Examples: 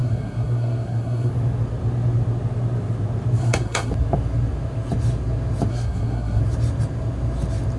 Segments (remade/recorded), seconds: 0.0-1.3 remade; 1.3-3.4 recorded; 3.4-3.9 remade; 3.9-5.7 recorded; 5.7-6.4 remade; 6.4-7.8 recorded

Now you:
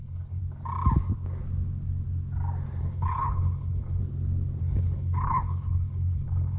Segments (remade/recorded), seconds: 0.0-0.4 remade; 0.4-2.8 recorded; 2.8-4.0 remade; 4.0-4.6 recorded; 4.6-6.6 remade

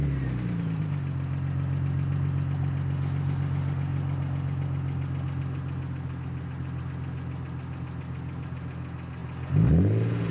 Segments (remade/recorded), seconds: 0.0-10.3 recorded

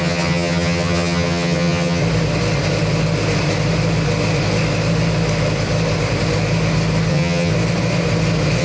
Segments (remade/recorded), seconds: 0.0-2.0 remade; 2.0-7.1 recorded; 7.1-7.5 remade; 7.5-8.6 recorded

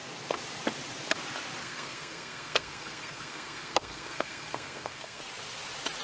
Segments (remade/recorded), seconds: 0.0-1.6 recorded; 1.6-5.2 remade; 5.2-6.0 recorded

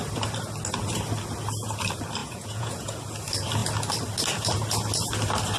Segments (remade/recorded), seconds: 0.0-2.2 recorded; 2.2-3.0 remade; 3.0-5.6 recorded